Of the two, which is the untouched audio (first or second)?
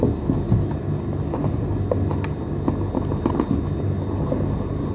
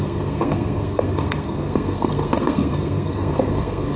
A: first